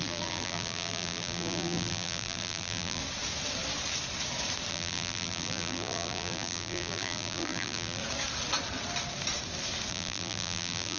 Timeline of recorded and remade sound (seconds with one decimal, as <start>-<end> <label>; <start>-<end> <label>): 0.0-3.0 remade; 3.0-4.7 recorded; 4.7-8.0 remade; 8.0-9.9 recorded; 9.9-11.0 remade